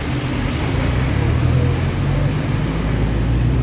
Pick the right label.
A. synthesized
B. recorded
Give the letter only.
B